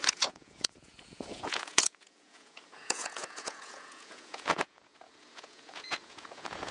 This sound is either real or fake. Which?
fake